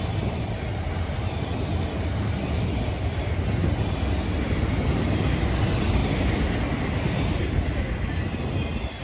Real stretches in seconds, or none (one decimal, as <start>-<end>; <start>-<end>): 1.7-5.6; 6.0-9.0